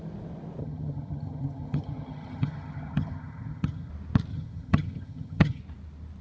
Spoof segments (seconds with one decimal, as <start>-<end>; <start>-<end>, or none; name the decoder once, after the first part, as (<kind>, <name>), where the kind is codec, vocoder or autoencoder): 0.6-3.9 (vocoder, HiFi-GAN); 4.3-5.6